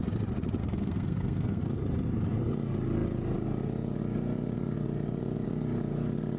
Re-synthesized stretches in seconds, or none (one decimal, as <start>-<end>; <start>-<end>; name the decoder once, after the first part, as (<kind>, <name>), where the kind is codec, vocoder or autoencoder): 0.6-1.6 (codec, SNAC)